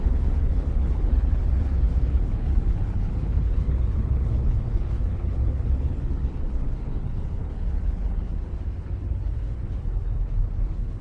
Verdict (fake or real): fake